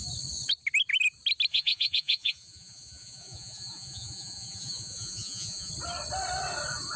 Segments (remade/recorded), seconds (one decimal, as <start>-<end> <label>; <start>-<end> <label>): 0.0-1.5 recorded; 1.5-5.7 remade; 5.7-7.0 recorded